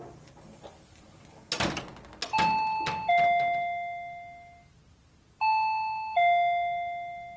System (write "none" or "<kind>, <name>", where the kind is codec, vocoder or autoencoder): none